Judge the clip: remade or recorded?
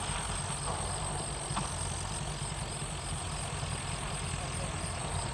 recorded